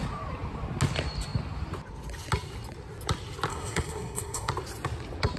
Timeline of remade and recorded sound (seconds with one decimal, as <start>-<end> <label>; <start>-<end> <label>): 0.0-3.5 recorded; 3.5-4.5 remade; 4.5-5.4 recorded

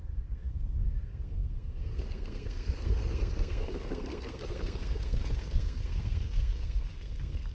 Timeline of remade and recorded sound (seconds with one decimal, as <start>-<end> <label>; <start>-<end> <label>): 0.0-7.5 remade